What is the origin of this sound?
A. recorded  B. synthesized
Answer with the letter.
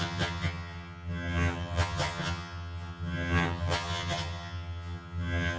B